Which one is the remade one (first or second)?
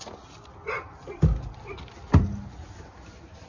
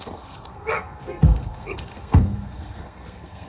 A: second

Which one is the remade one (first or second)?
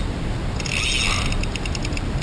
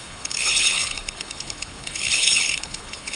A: second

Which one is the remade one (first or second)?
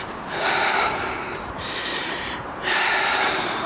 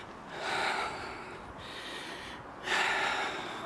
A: first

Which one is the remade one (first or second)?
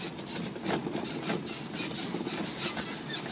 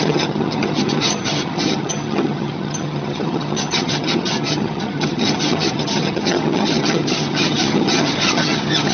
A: second